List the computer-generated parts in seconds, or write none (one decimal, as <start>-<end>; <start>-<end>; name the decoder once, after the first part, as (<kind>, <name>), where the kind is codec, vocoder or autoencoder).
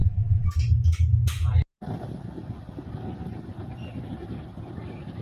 0.0-0.5 (vocoder, BigVGAN v2)